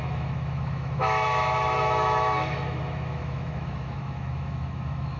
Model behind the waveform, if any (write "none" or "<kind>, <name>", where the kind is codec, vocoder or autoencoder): autoencoder, DAC-VAE